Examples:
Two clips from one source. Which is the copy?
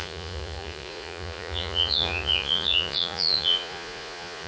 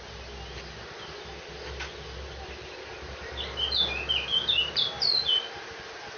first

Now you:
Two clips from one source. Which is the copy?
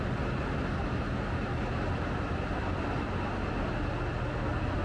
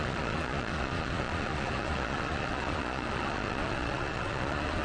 second